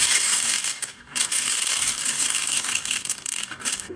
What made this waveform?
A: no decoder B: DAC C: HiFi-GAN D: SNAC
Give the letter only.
B